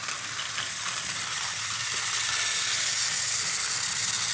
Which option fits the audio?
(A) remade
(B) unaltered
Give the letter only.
B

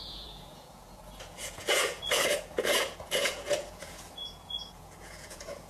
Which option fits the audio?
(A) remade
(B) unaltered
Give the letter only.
A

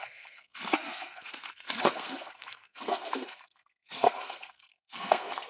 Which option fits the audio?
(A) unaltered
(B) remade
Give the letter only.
B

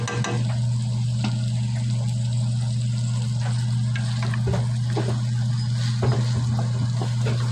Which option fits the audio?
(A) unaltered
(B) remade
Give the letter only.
A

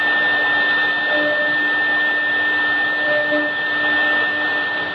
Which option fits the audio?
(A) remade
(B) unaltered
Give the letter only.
B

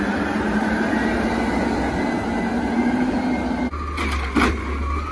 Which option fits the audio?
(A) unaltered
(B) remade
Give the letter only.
A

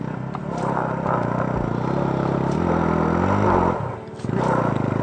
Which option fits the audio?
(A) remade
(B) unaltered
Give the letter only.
B